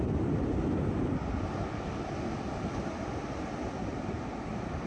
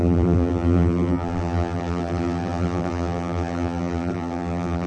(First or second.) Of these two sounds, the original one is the first